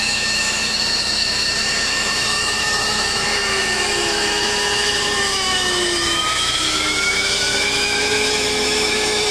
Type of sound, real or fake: fake